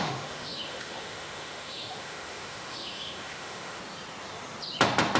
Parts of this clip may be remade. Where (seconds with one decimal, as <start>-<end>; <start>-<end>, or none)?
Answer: 0.0-3.8